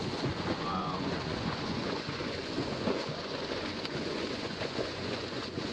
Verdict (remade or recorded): remade